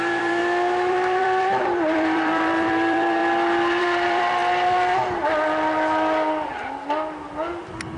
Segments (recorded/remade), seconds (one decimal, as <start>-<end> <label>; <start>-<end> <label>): 0.0-0.4 remade; 0.4-0.9 recorded; 0.9-3.2 remade; 3.2-3.8 recorded; 3.8-4.4 remade; 4.4-8.0 recorded